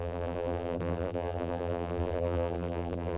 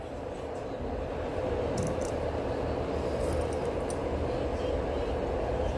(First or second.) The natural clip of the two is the second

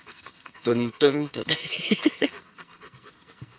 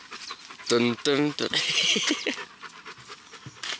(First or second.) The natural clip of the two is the second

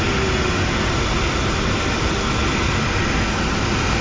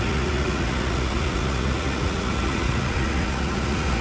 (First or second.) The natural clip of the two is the first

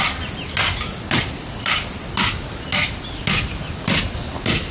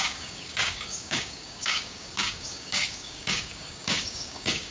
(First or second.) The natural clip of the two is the first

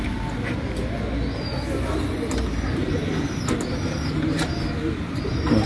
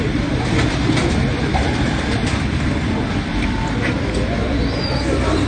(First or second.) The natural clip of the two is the first